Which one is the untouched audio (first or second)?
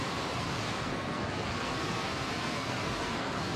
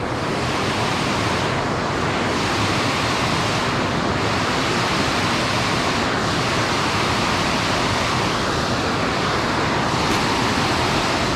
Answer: second